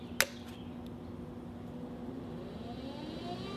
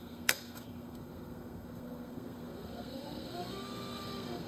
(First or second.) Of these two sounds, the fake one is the second